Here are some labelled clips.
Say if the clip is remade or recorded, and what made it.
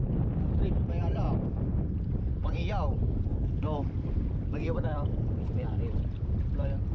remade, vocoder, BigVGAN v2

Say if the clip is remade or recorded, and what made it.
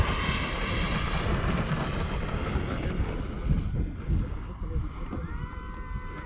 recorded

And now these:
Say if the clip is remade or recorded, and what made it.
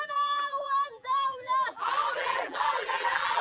remade, vocoder, BigVGAN v2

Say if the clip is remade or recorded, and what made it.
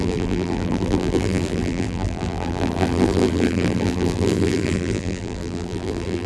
remade, vocoder, BigVGAN v2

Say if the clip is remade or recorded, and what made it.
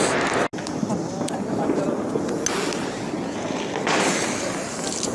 recorded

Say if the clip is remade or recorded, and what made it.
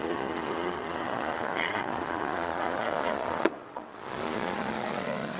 remade, vocoder, Vocos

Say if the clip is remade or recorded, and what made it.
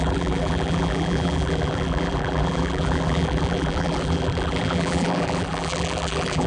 remade, vocoder, BigVGAN v2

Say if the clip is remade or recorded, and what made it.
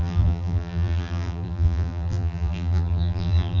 remade, vocoder, BigVGAN v2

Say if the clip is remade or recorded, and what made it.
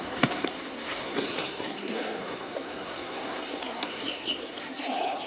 remade, codec, SNAC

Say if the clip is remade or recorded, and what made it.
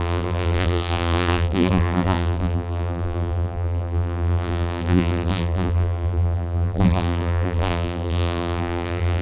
remade, vocoder, BigVGAN v2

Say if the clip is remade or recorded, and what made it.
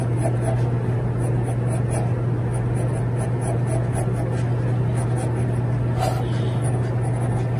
recorded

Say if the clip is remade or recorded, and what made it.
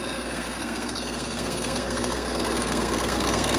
remade, codec, SNAC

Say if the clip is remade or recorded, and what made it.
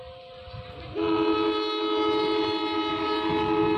recorded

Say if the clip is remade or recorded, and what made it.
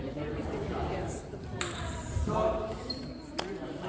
remade, vocoder, BigVGAN v2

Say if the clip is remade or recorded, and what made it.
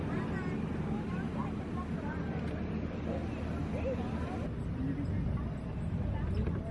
recorded